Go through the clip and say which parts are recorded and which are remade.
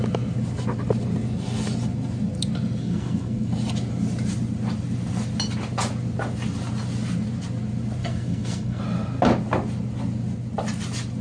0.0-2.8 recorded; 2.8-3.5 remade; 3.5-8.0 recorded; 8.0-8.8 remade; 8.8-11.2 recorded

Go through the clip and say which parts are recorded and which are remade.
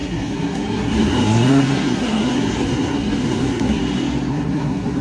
0.0-3.8 remade; 3.8-4.3 recorded; 4.3-5.0 remade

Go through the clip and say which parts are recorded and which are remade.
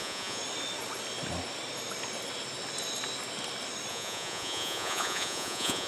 0.0-0.4 remade; 0.4-3.9 recorded; 3.9-5.9 remade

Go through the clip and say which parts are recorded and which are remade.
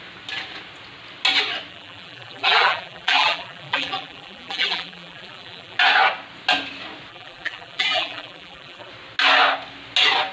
0.0-1.7 recorded; 1.7-5.8 remade; 5.8-7.1 recorded; 7.1-8.9 remade; 8.9-10.3 recorded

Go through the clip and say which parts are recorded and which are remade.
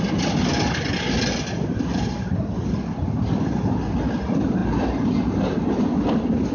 0.0-6.5 recorded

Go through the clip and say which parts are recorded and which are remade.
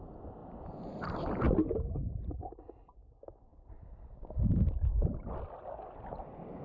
0.0-0.4 recorded; 0.4-1.1 remade; 1.1-3.5 recorded; 3.5-5.3 remade; 5.3-6.6 recorded